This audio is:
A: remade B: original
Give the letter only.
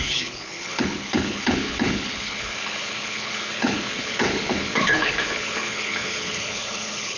A